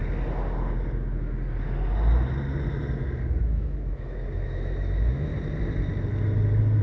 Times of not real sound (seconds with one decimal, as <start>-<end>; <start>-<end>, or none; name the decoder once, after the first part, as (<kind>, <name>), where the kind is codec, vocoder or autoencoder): 3.4-5.3 (autoencoder, DAC-VAE)